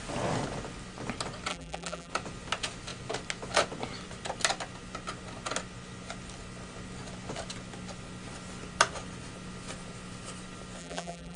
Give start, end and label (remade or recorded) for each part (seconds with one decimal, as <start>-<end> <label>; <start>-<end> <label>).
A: 0.0-1.5 recorded; 1.5-2.1 remade; 2.1-10.8 recorded; 10.8-11.4 remade